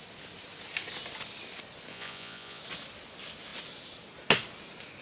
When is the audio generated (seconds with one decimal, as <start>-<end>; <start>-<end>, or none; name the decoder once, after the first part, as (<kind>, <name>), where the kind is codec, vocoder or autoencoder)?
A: 1.9-2.6 (vocoder, Vocos)